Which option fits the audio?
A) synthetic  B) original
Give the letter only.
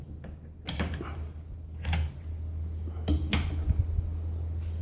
B